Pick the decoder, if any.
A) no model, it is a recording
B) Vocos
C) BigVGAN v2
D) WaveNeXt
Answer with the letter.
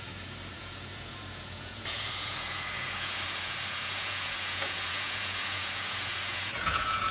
B